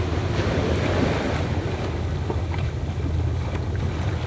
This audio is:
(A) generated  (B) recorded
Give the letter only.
B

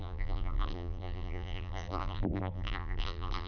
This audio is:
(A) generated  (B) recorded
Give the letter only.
A